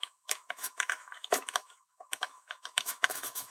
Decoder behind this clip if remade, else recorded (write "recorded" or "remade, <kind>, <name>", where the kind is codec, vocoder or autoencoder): remade, autoencoder, DAC-VAE